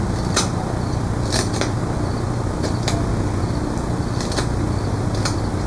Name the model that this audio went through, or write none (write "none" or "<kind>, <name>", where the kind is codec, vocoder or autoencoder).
none